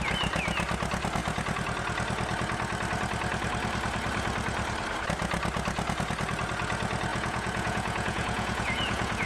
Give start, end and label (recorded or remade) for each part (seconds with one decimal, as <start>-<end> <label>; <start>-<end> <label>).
0.0-7.1 recorded; 7.1-9.3 remade